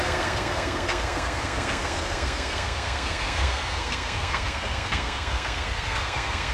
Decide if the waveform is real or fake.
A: fake